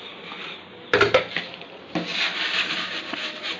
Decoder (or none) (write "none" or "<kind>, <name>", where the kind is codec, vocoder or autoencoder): none